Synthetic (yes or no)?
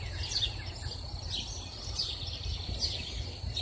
no